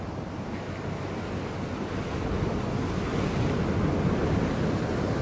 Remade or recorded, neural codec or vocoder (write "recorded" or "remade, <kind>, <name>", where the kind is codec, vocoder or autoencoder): recorded